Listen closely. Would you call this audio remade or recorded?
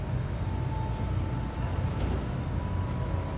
recorded